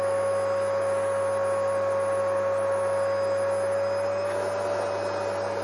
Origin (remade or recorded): recorded